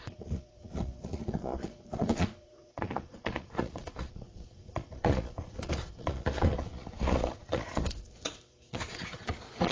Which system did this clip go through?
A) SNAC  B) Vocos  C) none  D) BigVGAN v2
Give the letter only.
B